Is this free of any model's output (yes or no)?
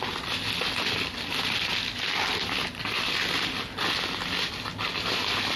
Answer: yes